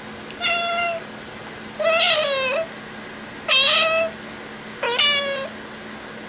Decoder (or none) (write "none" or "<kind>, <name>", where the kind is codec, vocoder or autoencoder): none